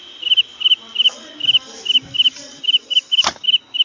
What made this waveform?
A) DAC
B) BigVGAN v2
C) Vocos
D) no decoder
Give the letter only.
D